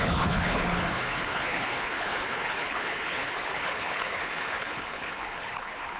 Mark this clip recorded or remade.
remade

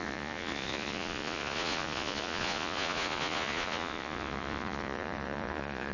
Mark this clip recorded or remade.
remade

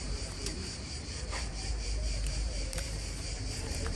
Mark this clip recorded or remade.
remade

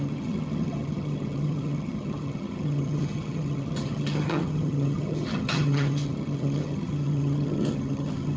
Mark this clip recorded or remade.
remade